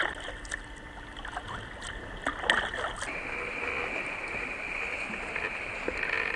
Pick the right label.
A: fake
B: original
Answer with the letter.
B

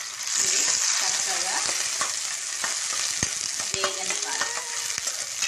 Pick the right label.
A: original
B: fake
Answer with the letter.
A